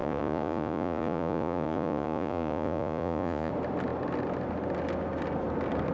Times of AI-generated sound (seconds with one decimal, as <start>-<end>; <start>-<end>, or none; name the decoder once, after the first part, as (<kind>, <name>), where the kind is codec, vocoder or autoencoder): 0.0-3.5 (vocoder, Vocos)